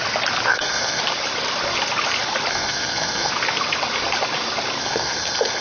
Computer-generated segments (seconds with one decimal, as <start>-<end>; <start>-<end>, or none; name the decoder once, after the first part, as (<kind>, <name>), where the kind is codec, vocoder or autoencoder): 0.5-1.0 (codec, SNAC); 2.5-3.3; 4.8-5.6